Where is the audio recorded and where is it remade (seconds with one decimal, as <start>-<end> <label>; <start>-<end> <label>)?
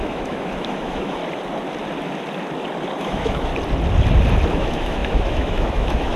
0.0-1.2 remade; 1.2-3.0 recorded; 3.0-3.5 remade; 3.5-4.5 recorded; 4.5-6.2 remade